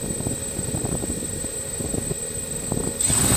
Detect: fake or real real